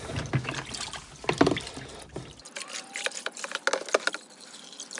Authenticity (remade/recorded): recorded